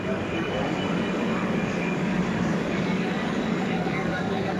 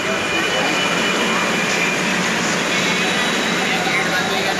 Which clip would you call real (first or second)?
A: second